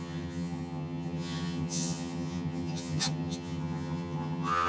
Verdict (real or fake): fake